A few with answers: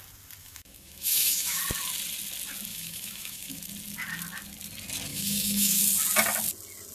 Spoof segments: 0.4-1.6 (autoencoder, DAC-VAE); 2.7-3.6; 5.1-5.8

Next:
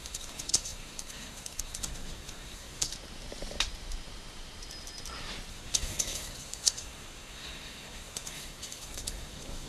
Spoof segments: 0.0-2.9 (codec, SNAC); 5.5-9.7

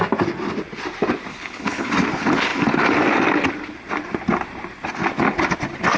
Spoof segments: 1.3-1.9 (codec, HILCodec)